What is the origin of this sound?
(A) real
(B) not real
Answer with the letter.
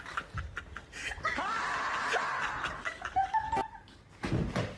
A